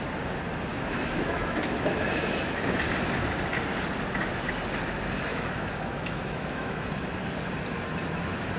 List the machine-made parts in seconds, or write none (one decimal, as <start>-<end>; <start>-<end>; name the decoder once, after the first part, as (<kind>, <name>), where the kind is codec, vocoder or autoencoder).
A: 0.7-2.8 (autoencoder, DAC-VAE); 5.3-6.9